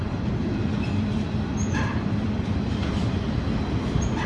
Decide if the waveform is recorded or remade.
recorded